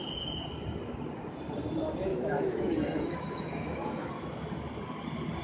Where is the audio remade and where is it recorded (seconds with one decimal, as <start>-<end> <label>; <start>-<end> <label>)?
0.0-2.1 recorded; 2.1-4.1 remade; 4.1-5.4 recorded